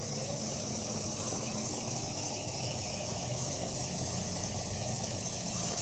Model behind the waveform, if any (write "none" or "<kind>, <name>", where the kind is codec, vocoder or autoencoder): autoencoder, DAC-VAE